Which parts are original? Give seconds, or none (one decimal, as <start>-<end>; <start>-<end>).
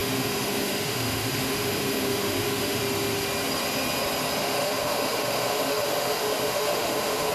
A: 2.8-4.4